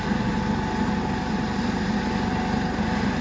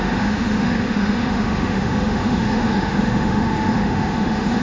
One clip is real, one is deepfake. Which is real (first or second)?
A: first